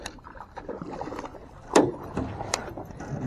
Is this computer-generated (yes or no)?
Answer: yes